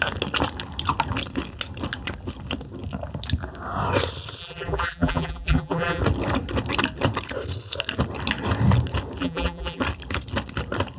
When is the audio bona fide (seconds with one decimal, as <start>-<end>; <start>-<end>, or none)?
0.0-4.4; 6.0-9.2; 9.8-11.0